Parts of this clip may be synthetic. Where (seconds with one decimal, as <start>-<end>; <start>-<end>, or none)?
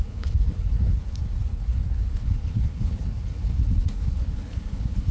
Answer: 0.0-5.1